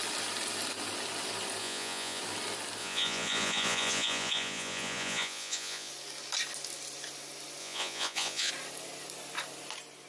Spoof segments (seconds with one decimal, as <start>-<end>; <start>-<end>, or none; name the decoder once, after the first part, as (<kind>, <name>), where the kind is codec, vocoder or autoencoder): 1.6-2.2 (vocoder, Vocos); 2.8-5.9; 7.6-8.5